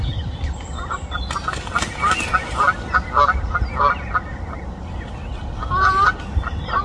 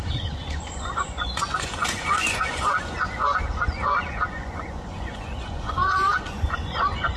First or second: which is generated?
second